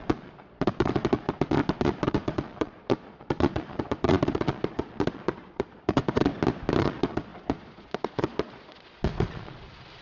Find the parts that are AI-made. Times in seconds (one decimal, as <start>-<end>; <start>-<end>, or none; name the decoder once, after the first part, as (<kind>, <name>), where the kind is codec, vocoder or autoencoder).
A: 0.0-6.3 (vocoder, Vocos); 6.8-10.0